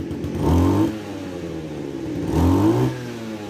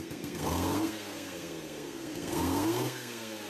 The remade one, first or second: second